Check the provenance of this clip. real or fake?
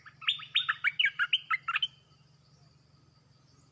real